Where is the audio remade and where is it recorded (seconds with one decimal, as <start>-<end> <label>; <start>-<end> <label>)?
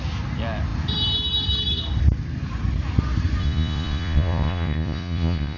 0.0-3.4 recorded; 3.4-5.6 remade